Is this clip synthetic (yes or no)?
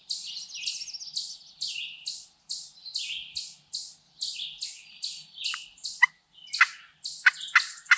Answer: no